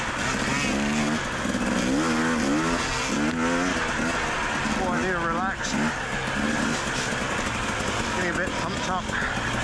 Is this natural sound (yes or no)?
yes